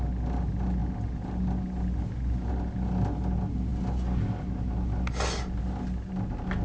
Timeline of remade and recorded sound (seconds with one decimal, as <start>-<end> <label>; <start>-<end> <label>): 0.0-6.6 recorded

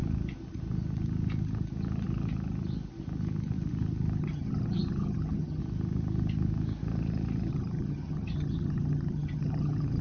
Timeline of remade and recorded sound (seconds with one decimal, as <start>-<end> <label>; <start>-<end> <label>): 0.0-4.2 recorded; 4.2-5.6 remade; 5.6-7.5 recorded; 7.5-10.0 remade

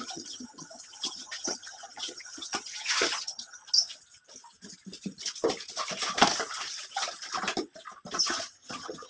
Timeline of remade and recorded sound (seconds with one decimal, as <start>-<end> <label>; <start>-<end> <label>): 0.0-3.6 remade; 3.6-8.2 recorded; 8.2-9.1 remade

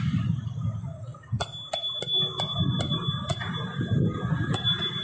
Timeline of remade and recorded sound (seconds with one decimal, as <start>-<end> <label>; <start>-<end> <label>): 0.0-5.0 recorded

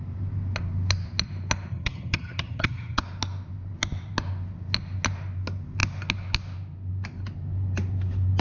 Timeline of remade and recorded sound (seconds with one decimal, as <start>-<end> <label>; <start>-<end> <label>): 0.0-1.7 recorded; 1.7-3.0 remade; 3.0-8.4 recorded

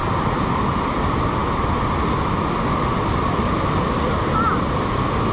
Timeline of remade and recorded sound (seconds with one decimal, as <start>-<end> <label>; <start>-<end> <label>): 0.0-5.3 recorded

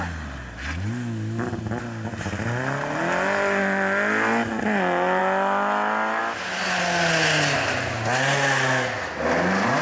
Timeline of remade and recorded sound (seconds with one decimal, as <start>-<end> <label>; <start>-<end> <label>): 0.0-9.8 recorded